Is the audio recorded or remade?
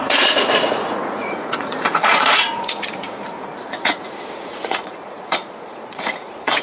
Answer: remade